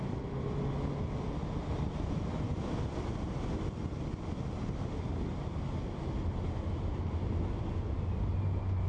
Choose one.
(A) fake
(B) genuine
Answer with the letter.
B